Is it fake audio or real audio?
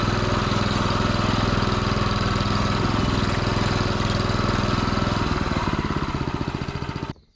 real